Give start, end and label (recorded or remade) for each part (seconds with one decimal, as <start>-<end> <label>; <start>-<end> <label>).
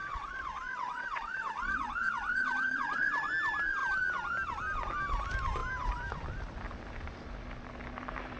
0.0-3.3 remade; 3.3-8.4 recorded